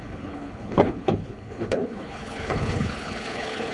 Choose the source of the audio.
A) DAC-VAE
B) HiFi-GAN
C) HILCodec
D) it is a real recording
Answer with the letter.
C